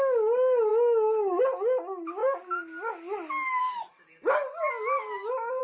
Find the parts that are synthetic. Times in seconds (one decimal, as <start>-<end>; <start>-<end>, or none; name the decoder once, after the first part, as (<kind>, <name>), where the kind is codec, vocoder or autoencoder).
none